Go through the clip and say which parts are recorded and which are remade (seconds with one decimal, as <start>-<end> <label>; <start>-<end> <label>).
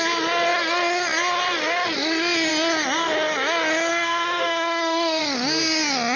0.0-3.9 recorded; 3.9-5.2 remade; 5.2-6.2 recorded